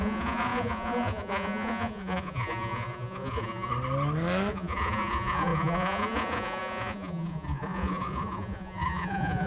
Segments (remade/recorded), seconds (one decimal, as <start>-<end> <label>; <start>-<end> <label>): 0.0-3.7 remade; 3.7-4.5 recorded; 4.5-9.5 remade